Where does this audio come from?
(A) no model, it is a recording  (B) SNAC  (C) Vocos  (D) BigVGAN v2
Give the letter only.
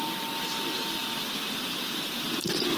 A